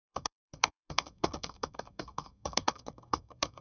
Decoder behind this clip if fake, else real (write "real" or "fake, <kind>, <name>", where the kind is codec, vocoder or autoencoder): fake, codec, SNAC